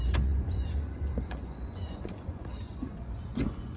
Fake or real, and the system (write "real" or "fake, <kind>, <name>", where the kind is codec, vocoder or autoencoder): fake, vocoder, Vocos